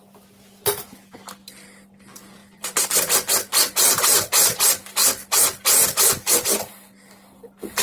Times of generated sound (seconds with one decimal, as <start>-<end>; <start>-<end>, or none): 2.4-2.9